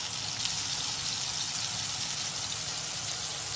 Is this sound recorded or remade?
recorded